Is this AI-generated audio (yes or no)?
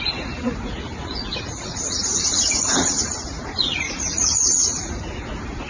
yes